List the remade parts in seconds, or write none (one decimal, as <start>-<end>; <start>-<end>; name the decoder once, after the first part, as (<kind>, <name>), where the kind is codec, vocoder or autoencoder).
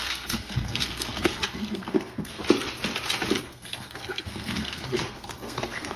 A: 0.0-2.4 (codec, SNAC); 3.4-6.0